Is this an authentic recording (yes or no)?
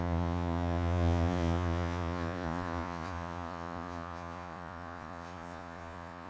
no